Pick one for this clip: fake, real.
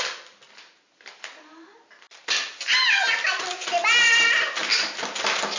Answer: real